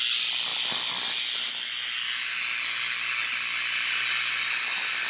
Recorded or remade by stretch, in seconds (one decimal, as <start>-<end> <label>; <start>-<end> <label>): 0.0-5.1 recorded